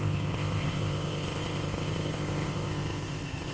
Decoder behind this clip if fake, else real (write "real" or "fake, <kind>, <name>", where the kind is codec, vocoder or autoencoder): fake, codec, ZipCodec